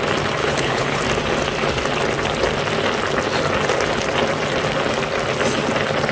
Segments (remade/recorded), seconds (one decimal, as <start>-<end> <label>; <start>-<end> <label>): 0.0-0.4 recorded; 0.4-1.0 remade; 1.0-6.1 recorded